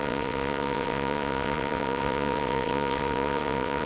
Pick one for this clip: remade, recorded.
remade